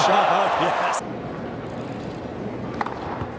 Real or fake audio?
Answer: real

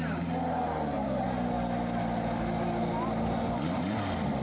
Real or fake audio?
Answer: real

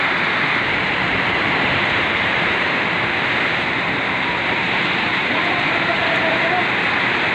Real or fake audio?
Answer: fake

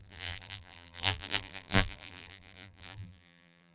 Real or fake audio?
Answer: fake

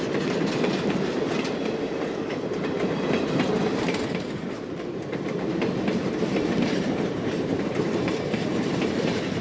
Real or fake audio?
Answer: fake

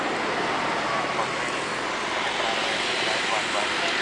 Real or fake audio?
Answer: real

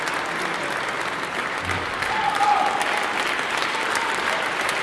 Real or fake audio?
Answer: real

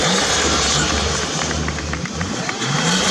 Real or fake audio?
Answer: fake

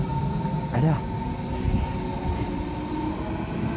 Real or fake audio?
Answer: real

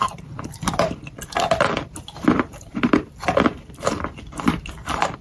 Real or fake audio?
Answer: fake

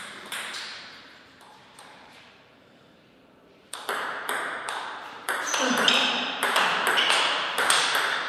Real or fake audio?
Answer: fake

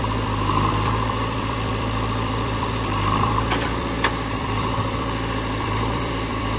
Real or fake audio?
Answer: fake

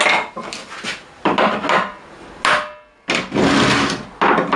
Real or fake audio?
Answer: real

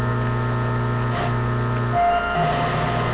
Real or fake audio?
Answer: real